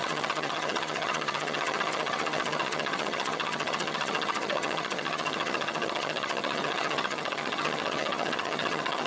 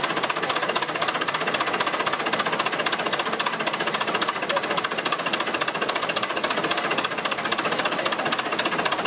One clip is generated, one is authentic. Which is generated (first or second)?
first